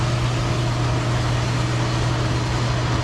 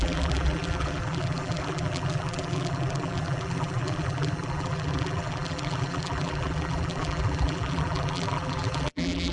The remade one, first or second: second